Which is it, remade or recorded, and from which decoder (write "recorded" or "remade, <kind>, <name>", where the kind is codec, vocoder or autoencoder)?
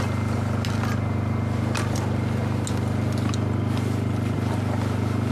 recorded